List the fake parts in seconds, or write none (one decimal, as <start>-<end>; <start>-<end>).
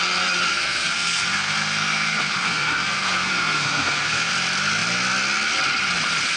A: 0.5-4.3